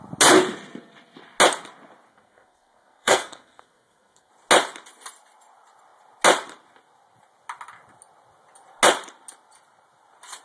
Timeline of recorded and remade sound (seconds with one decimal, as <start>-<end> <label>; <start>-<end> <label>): 0.0-2.1 recorded; 2.1-4.3 remade; 4.3-10.4 recorded